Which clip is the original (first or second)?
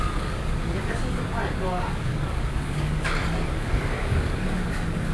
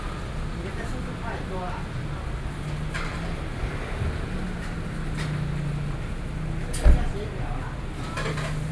second